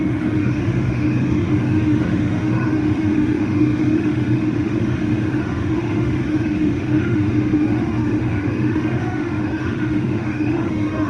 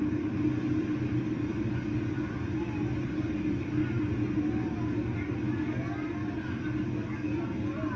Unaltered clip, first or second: second